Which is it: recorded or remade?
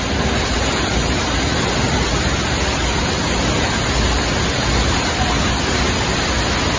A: recorded